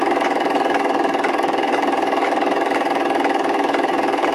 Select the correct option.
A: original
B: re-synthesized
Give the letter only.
B